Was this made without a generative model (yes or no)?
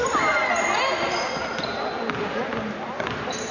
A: yes